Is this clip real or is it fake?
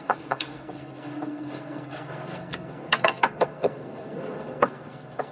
fake